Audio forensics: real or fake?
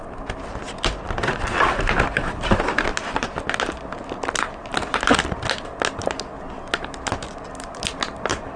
real